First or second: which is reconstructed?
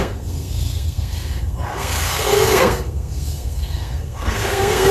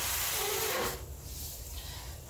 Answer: first